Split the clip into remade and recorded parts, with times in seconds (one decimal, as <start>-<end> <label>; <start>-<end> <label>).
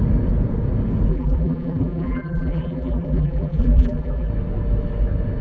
0.0-1.1 recorded; 1.1-4.3 remade; 4.3-5.4 recorded